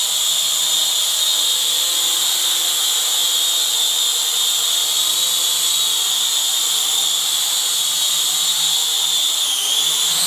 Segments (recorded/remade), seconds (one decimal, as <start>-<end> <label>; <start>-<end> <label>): 0.0-10.3 recorded